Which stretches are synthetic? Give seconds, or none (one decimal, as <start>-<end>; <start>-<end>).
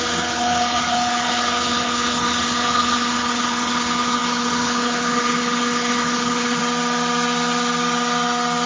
0.0-6.6